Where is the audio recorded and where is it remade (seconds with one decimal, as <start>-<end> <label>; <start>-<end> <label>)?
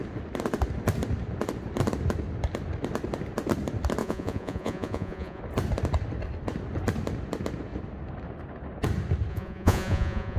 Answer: 0.0-4.0 recorded; 4.0-5.4 remade; 5.4-9.3 recorded; 9.3-10.4 remade